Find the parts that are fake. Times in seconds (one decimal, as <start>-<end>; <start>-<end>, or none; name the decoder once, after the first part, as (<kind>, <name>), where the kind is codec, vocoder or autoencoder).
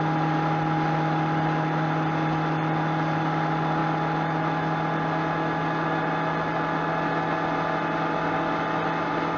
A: none